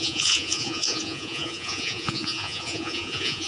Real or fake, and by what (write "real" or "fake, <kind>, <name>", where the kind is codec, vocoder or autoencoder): fake, vocoder, Vocos